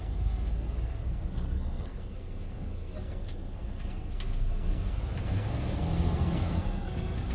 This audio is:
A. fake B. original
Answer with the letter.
A